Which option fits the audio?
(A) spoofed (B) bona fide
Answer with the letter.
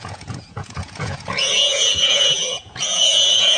A